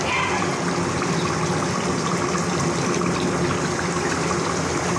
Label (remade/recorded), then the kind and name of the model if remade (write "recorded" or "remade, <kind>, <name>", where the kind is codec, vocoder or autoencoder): recorded